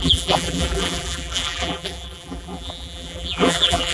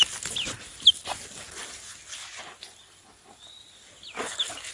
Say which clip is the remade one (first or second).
first